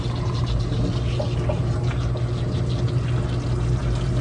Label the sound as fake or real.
real